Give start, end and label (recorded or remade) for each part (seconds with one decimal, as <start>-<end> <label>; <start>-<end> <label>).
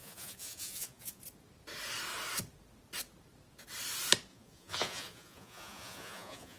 0.0-1.2 remade; 1.2-4.3 recorded; 4.3-6.6 remade